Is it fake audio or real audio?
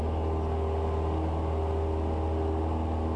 real